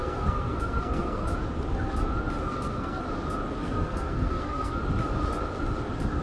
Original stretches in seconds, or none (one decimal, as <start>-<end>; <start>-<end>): 1.3-2.4; 3.0-3.6; 4.8-6.2